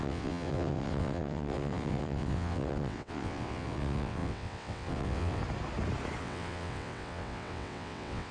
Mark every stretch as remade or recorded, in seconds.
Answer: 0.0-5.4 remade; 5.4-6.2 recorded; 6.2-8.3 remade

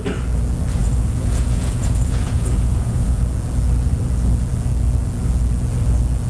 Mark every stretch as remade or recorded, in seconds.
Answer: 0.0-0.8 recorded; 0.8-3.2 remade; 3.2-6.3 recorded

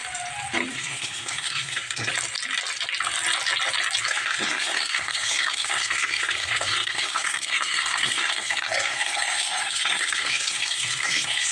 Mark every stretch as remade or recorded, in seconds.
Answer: 0.0-0.7 recorded; 0.7-2.1 remade; 2.1-4.0 recorded; 4.0-11.5 remade